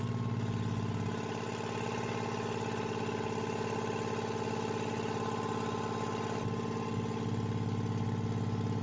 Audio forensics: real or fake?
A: real